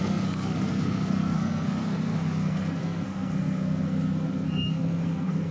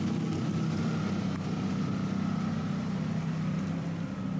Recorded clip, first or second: second